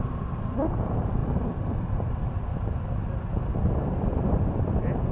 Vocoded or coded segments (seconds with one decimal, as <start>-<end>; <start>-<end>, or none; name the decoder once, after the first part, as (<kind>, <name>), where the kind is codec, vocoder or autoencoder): 0.0-1.2 (vocoder, BigVGAN v2); 4.3-5.1